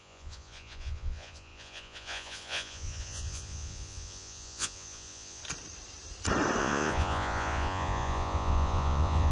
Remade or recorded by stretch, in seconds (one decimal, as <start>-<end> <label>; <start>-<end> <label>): 0.0-5.4 remade; 5.4-6.6 recorded; 6.6-9.3 remade